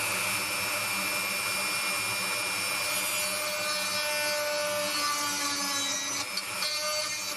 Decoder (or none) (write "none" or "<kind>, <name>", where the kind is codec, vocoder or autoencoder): none